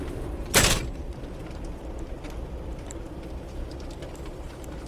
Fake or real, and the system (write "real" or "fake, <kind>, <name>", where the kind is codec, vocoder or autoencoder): fake, vocoder, BigVGAN v2